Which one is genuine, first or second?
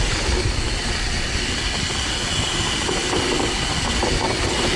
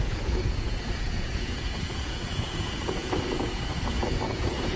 first